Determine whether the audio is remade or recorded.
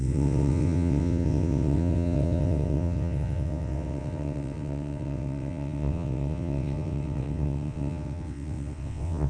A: remade